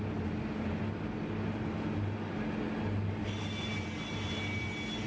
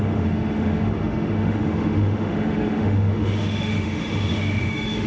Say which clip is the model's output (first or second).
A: second